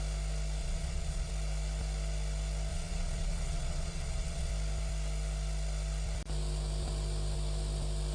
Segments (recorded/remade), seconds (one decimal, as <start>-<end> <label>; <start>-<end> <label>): 0.0-0.6 recorded; 0.6-1.3 remade; 1.3-2.7 recorded; 2.7-4.5 remade; 4.5-8.1 recorded